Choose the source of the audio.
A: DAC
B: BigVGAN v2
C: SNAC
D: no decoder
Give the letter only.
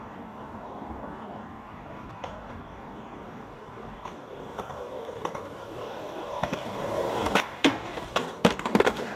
A